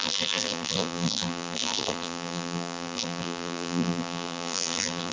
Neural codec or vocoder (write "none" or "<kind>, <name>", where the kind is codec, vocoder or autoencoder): vocoder, BigVGAN v2